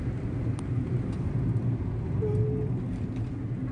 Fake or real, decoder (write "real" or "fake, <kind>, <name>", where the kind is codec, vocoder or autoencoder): real